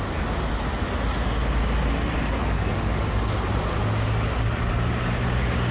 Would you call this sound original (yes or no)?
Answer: yes